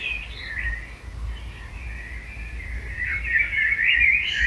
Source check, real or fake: real